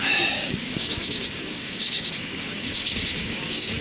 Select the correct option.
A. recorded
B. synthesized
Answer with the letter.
B